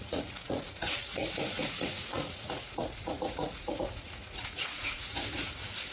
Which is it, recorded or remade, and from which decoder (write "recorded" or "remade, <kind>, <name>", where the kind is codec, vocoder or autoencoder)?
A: remade, vocoder, Vocos